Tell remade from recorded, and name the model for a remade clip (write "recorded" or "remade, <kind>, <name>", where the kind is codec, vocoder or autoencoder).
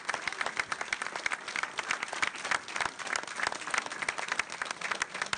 recorded